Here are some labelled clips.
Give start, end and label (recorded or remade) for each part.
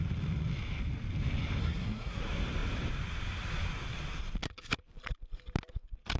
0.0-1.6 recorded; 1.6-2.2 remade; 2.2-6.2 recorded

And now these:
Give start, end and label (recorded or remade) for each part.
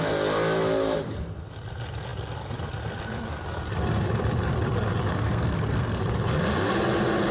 0.0-5.1 recorded; 5.1-6.0 remade; 6.0-7.3 recorded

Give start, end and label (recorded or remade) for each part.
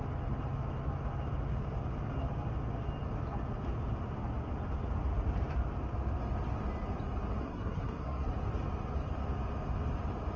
0.0-7.4 recorded; 7.4-8.3 remade; 8.3-10.4 recorded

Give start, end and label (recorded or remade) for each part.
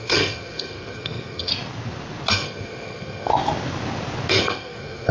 0.0-1.5 remade; 1.5-2.3 recorded; 2.3-3.3 remade; 3.3-4.3 recorded; 4.3-5.1 remade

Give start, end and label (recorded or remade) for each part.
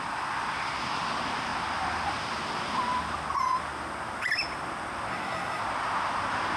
0.0-5.1 recorded; 5.1-5.6 remade; 5.6-6.6 recorded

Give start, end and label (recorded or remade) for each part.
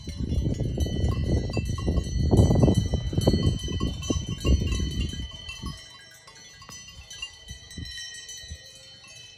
0.0-9.4 recorded